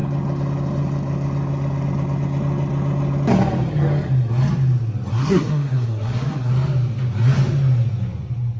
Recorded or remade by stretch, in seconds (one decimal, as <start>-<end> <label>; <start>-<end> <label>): 0.0-5.1 recorded; 5.1-6.5 remade; 6.5-8.6 recorded